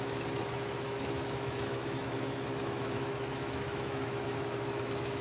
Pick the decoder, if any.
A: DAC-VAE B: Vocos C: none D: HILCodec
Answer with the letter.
A